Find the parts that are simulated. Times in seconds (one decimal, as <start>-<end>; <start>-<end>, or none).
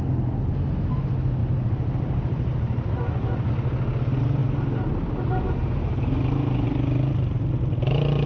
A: 1.4-3.5; 4.4-5.1